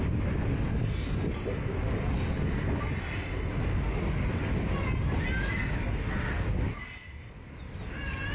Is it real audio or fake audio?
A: real